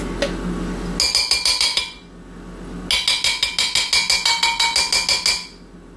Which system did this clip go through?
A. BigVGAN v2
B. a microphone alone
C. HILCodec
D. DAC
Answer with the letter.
B